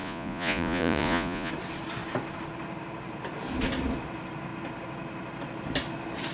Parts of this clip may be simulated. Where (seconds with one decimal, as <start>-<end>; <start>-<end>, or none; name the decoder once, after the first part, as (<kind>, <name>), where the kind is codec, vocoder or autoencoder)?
0.0-1.5 (vocoder, Vocos)